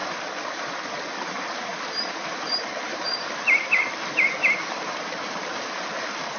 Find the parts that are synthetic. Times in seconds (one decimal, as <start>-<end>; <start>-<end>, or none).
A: 2.1-6.4